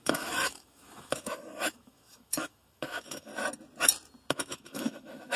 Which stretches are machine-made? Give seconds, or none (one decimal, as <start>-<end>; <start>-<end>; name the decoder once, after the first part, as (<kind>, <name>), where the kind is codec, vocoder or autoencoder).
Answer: 0.0-3.3 (autoencoder, DAC-VAE); 4.3-5.4